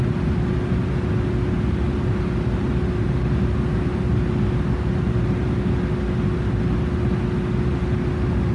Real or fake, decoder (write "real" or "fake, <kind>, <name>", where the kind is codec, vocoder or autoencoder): real